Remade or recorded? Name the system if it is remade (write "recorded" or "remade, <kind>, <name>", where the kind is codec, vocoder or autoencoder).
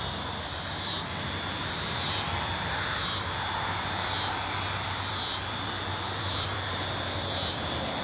remade, vocoder, BigVGAN v2